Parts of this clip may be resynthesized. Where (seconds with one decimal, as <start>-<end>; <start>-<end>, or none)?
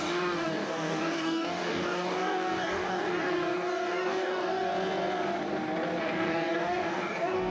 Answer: 0.0-4.7; 6.0-7.5